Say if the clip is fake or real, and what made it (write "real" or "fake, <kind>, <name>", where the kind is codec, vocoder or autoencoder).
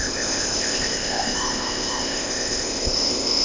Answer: fake, codec, ZipCodec